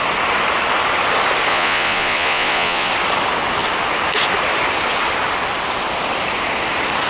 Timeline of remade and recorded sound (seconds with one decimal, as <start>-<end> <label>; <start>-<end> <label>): 0.0-1.5 recorded; 1.5-2.9 remade; 2.9-7.1 recorded